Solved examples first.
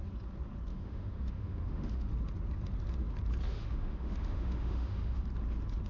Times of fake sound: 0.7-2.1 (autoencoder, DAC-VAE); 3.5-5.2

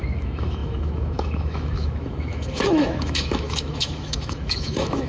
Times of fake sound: 0.0-5.1 (autoencoder, DAC-VAE)

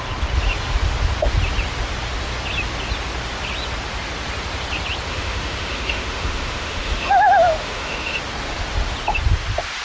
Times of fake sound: 5.1-7.1 (autoencoder, DAC-VAE); 7.6-8.2

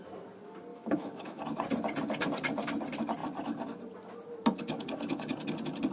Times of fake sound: 0.7-1.4 (autoencoder, DAC-VAE)

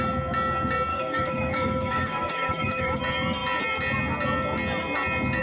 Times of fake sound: 0.9-3.0 (autoencoder, DAC-VAE)

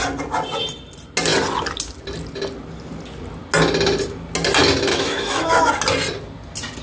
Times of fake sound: 4.9-5.7 (autoencoder, DAC-VAE)

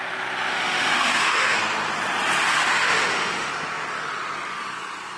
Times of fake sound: 0.5-1.6 (autoencoder, DAC-VAE); 2.5-3.5